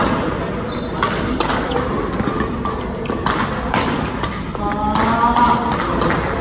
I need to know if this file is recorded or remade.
recorded